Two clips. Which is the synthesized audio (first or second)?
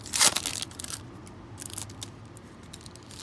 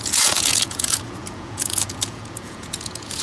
second